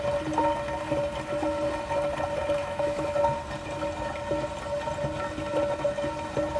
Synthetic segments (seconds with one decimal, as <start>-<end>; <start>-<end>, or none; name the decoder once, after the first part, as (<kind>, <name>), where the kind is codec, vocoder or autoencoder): 2.6-3.1 (autoencoder, DAC-VAE)